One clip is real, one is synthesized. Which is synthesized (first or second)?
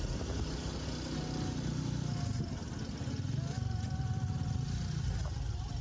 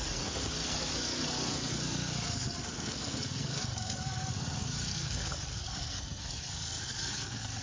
second